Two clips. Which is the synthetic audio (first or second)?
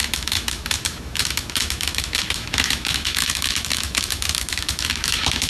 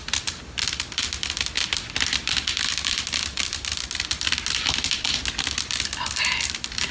first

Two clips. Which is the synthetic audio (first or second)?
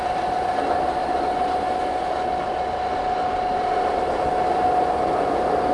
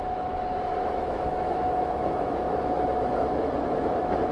second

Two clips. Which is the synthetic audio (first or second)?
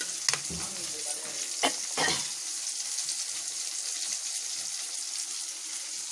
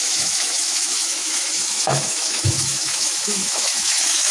second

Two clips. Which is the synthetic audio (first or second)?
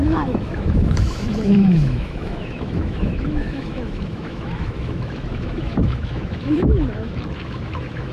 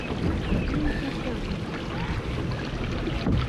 first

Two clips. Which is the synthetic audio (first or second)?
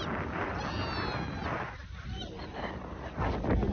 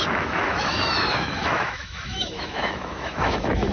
second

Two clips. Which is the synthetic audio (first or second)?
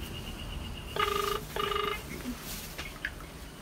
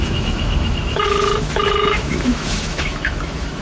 second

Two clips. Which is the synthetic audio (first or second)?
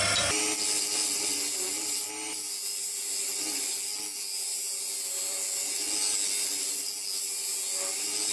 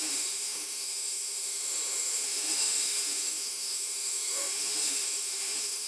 second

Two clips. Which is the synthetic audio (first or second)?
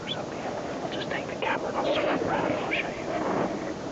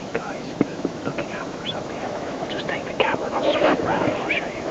second